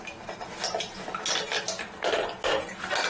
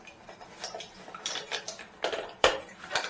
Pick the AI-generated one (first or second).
second